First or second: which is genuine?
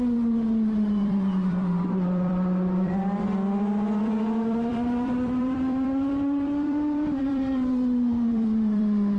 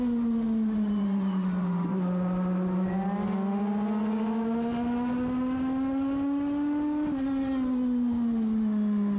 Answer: second